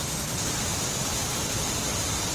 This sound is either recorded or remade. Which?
recorded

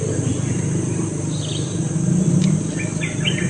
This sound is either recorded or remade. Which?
recorded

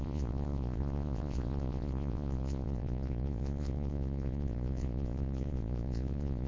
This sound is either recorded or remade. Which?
remade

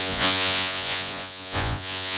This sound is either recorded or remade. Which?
remade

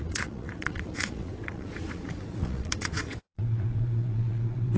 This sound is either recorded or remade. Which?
remade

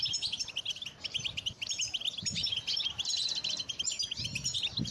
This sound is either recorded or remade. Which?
recorded